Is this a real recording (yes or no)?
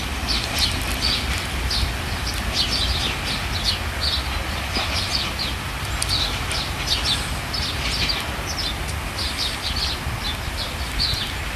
yes